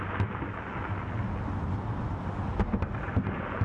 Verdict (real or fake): real